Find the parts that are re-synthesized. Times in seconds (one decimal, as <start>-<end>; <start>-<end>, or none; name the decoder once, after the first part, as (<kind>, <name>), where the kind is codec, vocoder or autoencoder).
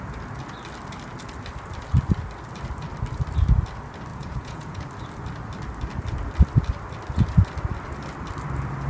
4.1-4.8 (vocoder, Vocos)